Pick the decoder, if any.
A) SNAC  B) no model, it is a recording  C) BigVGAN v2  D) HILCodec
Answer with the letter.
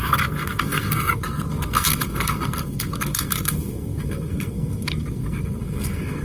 A